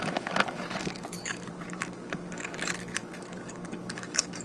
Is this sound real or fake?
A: fake